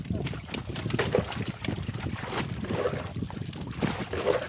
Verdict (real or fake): fake